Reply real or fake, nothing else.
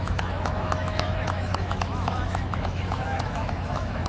fake